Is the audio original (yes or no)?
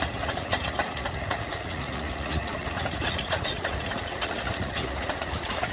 no